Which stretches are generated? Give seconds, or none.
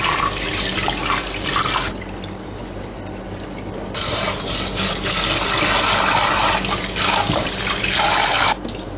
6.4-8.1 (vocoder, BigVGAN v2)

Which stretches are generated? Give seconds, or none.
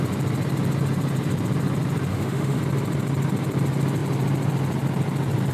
2.1-2.6 (autoencoder, DAC-VAE)